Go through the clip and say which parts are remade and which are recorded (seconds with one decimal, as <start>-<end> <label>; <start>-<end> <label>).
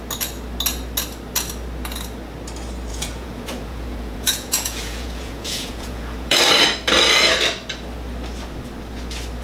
0.0-2.9 recorded; 2.9-6.4 remade; 6.4-9.4 recorded